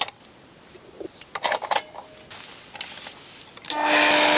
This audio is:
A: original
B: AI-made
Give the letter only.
A